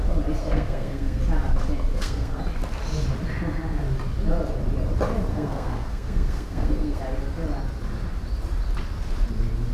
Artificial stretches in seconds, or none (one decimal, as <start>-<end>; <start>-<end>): 0.4-1.2; 1.9-2.4; 5.3-7.0